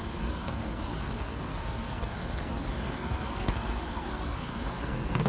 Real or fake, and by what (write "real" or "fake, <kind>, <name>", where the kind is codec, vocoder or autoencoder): fake, codec, SNAC